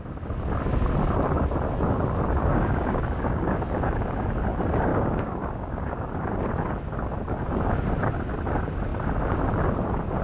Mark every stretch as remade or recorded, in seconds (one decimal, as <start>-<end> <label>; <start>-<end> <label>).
0.0-2.4 recorded; 2.4-3.8 remade; 3.8-4.9 recorded; 4.9-5.8 remade; 5.8-10.2 recorded